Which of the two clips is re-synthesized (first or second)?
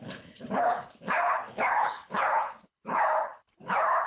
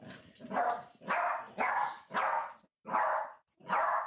first